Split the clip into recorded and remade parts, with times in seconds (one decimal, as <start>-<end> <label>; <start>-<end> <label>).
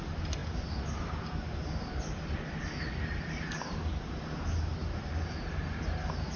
0.0-6.4 recorded